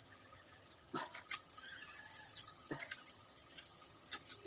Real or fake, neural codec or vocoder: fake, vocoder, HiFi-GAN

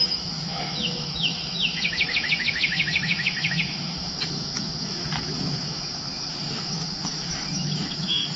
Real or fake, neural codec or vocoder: fake, autoencoder, DAC-VAE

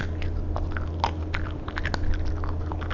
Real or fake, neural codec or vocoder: real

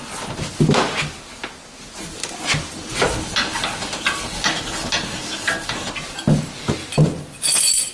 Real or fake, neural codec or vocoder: real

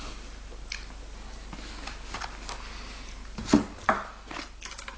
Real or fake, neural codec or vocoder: real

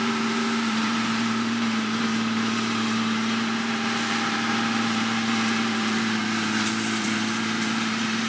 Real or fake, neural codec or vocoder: fake, vocoder, BigVGAN v2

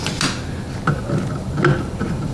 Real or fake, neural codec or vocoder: real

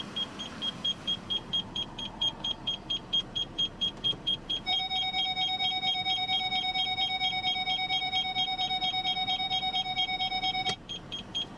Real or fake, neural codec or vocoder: fake, vocoder, BigVGAN v2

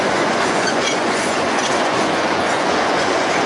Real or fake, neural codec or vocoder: fake, vocoder, Vocos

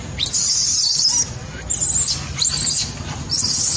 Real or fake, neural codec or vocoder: real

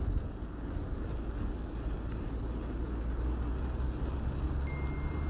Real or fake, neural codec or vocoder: real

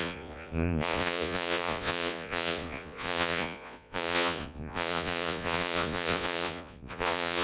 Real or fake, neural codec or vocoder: fake, vocoder, Vocos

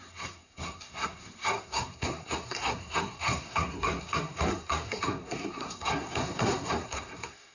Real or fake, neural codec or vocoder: fake, codec, SNAC